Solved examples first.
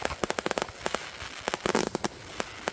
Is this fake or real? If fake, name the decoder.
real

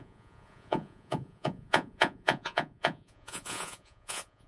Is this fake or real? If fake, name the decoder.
fake, vocoder, Vocos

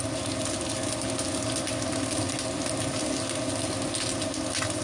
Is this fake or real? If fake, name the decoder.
real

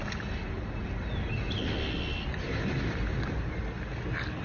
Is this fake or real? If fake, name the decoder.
real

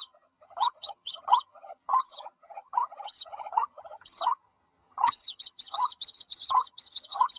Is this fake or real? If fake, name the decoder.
fake, vocoder, HiFi-GAN